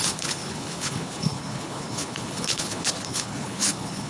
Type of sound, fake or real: fake